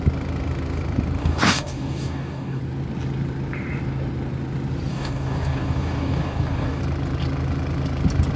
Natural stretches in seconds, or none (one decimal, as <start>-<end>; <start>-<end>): 0.0-1.2; 2.6-4.9; 6.8-8.4